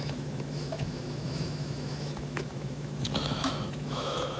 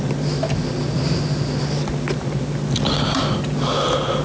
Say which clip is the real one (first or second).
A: second